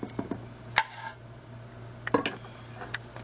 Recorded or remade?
recorded